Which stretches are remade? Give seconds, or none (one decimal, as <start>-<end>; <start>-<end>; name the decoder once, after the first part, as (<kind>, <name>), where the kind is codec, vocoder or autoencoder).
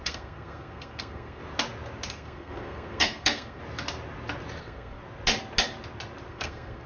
0.0-1.4 (codec, SNAC); 2.1-3.6; 4.6-5.0; 6.3-6.9